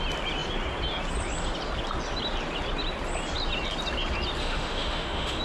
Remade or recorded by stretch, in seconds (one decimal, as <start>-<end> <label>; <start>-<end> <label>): 0.0-4.4 recorded; 4.4-5.4 remade

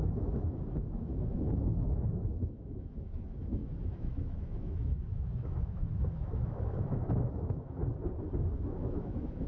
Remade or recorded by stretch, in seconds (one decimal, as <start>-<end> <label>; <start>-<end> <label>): 0.0-7.8 remade; 7.8-8.6 recorded; 8.6-9.5 remade

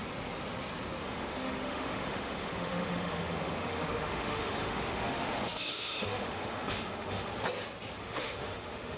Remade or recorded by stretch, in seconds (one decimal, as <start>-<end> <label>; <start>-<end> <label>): 0.0-1.0 recorded; 1.0-7.3 remade; 7.3-8.0 recorded; 8.0-9.0 remade

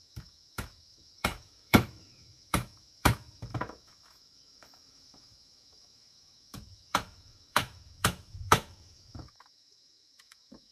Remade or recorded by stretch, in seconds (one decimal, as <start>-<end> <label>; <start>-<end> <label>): 0.0-10.7 remade

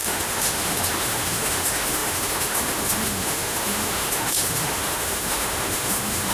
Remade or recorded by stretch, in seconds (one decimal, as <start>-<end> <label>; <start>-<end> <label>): 0.0-6.3 remade

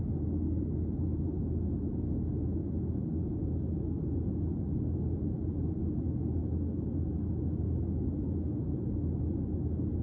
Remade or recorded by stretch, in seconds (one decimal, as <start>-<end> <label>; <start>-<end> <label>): 0.0-3.3 recorded; 3.3-4.0 remade; 4.0-5.8 recorded; 5.8-8.8 remade; 8.8-10.0 recorded

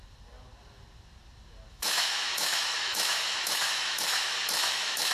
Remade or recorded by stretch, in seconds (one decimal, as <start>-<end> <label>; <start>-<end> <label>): 0.0-1.7 recorded; 1.7-5.1 remade

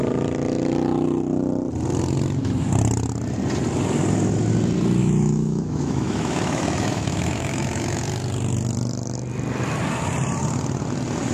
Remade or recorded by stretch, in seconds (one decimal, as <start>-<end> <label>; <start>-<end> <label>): 0.0-5.0 recorded; 5.0-8.0 remade; 8.0-11.3 recorded